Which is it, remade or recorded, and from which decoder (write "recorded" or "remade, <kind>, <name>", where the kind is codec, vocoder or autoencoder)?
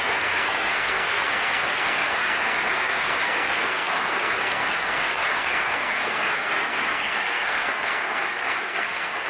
remade, codec, SNAC